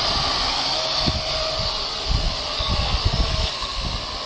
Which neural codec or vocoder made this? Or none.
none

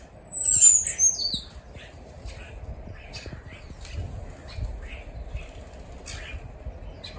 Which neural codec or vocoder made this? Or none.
none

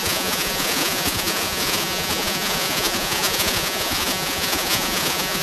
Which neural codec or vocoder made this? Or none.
vocoder, Vocos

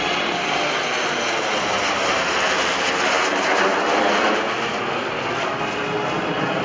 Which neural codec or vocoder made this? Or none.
none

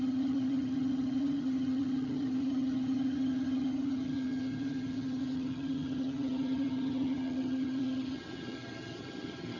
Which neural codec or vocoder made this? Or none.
vocoder, HiFi-GAN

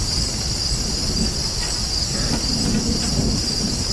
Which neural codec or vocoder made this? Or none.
vocoder, BigVGAN v2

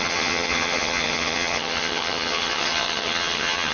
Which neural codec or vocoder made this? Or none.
vocoder, HiFi-GAN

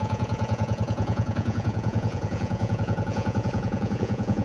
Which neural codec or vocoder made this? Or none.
vocoder, Vocos